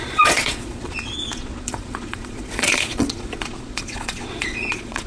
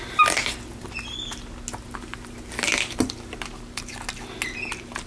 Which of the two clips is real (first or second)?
second